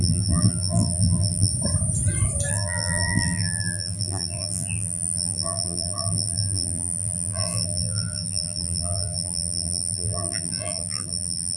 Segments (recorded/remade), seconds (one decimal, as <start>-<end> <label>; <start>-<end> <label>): 0.0-1.5 remade; 1.5-2.5 recorded; 2.5-11.6 remade